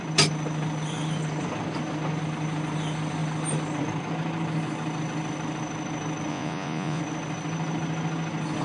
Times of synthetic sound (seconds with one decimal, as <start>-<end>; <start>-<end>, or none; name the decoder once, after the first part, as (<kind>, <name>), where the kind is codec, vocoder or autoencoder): 6.3-7.0 (vocoder, Vocos)